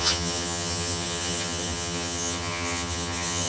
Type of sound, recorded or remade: remade